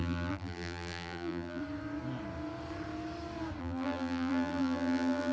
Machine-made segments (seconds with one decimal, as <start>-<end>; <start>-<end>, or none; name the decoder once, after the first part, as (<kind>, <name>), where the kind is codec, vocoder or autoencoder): 0.0-1.6 (vocoder, BigVGAN v2); 3.6-5.3